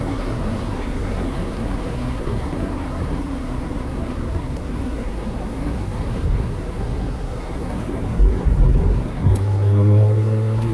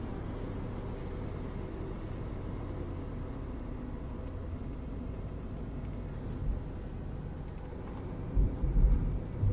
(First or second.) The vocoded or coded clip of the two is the first